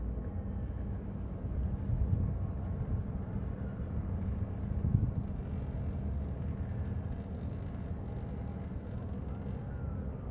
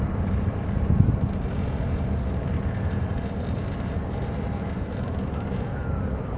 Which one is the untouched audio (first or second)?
first